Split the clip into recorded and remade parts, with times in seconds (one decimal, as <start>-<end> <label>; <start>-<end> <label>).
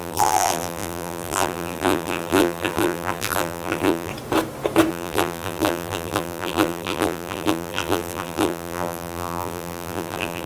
0.0-4.1 remade; 4.1-4.9 recorded; 4.9-10.5 remade